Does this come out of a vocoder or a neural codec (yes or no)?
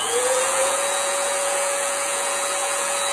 yes